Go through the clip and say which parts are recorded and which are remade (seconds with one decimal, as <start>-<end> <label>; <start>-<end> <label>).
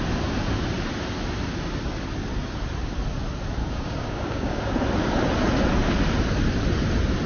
0.0-3.6 recorded; 3.6-4.7 remade; 4.7-7.3 recorded